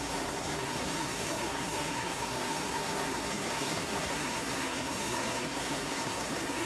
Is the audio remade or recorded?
remade